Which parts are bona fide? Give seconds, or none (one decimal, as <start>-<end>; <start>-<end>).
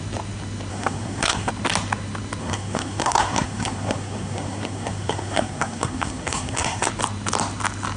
0.0-0.7; 1.5-2.4; 6.9-8.0